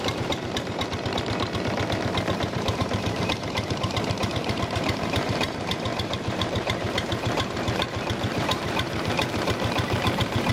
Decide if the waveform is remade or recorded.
remade